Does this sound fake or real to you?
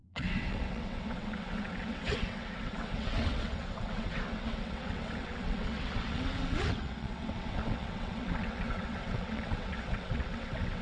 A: fake